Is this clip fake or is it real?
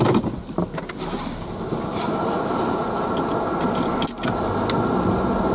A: real